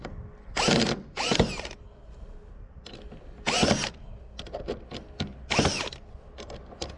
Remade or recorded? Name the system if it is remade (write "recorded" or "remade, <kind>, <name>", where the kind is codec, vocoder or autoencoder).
recorded